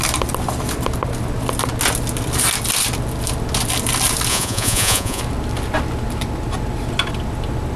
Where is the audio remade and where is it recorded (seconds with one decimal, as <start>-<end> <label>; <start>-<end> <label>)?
0.0-4.3 recorded; 4.3-5.2 remade; 5.2-7.8 recorded